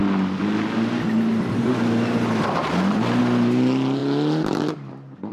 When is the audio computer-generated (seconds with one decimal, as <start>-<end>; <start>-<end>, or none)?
none